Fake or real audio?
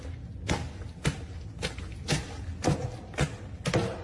real